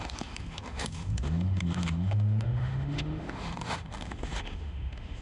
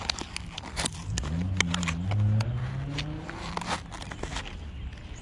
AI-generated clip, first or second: first